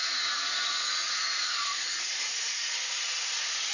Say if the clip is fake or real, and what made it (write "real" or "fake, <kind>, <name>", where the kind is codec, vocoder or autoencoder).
fake, vocoder, Vocos